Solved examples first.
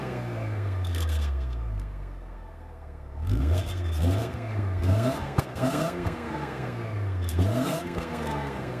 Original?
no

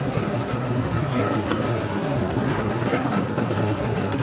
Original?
no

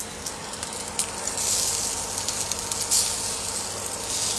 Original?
yes